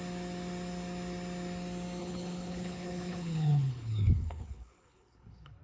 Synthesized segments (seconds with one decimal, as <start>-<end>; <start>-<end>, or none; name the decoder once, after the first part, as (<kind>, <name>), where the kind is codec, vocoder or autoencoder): 2.0-5.6 (codec, HILCodec)